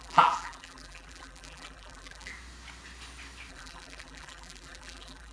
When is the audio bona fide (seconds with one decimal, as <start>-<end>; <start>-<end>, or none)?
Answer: 2.3-3.5